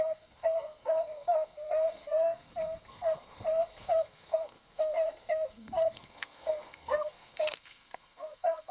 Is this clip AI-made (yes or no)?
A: yes